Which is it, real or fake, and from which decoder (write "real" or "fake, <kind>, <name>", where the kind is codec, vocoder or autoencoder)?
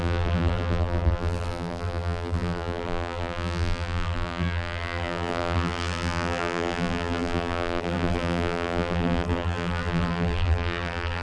fake, vocoder, BigVGAN v2